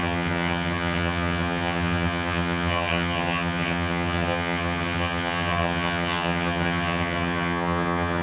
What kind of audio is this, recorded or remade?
remade